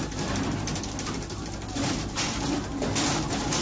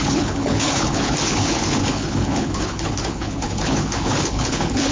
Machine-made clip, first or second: second